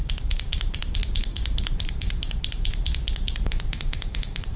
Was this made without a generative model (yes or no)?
no